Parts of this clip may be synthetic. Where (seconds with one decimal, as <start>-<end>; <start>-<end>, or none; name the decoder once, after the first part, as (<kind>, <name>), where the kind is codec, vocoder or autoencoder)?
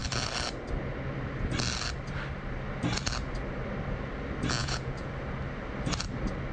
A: 4.6-5.1 (vocoder, Vocos)